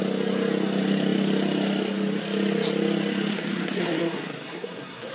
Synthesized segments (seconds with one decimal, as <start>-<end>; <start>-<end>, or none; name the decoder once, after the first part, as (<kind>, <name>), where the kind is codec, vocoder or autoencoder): 3.3-5.1 (codec, SNAC)